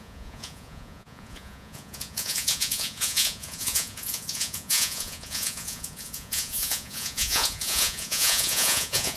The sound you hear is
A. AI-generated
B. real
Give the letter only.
A